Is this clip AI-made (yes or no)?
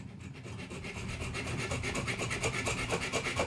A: no